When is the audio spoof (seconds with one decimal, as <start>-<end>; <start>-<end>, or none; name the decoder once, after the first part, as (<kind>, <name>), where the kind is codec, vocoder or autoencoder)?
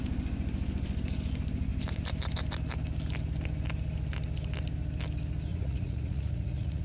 5.5-6.8 (vocoder, Vocos)